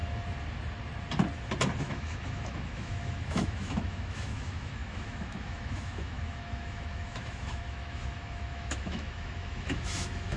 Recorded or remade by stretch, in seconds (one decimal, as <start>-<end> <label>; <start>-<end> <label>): 0.0-1.8 recorded; 1.8-10.4 remade